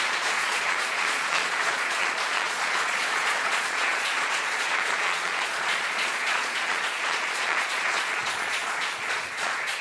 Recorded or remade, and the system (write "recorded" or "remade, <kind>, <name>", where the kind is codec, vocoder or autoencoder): remade, vocoder, Vocos